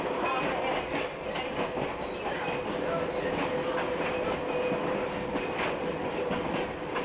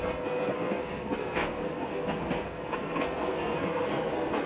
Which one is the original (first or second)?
first